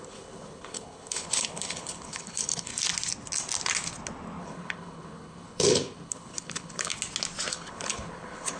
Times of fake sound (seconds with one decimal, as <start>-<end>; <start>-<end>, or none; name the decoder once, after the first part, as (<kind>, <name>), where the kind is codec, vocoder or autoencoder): 0.0-2.7 (codec, HILCodec); 4.4-6.9; 7.5-8.6